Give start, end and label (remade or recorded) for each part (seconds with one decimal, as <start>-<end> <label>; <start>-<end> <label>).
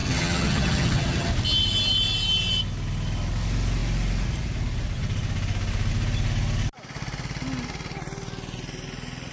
0.0-1.3 remade; 1.3-9.3 recorded